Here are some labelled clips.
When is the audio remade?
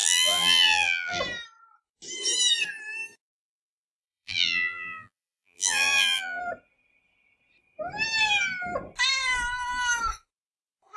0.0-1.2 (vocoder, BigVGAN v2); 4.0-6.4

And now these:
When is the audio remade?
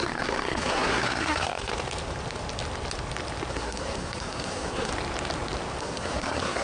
0.0-1.7 (codec, SNAC); 3.5-4.9; 5.8-6.6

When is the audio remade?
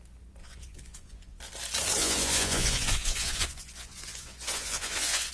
0.4-1.4 (vocoder, Vocos); 2.0-5.3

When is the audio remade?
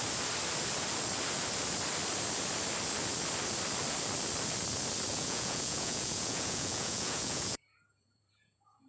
5.1-8.9 (vocoder, Vocos)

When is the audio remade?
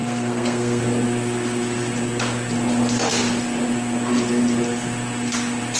0.0-0.8 (codec, SNAC)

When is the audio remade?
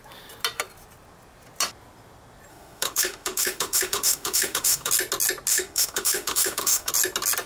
2.5-4.9 (autoencoder, DAC-VAE); 5.5-6.9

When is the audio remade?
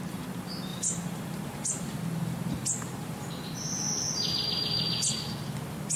0.7-3.3 (vocoder, BigVGAN v2)